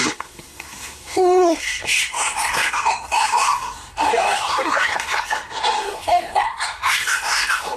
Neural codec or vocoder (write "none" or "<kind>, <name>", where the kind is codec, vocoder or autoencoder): codec, SNAC